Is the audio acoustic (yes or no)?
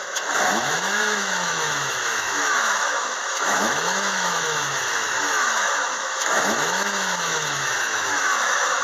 no